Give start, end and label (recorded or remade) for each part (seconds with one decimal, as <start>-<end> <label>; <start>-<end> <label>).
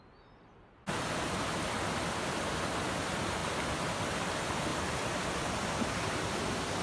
0.0-4.7 recorded; 4.7-6.8 remade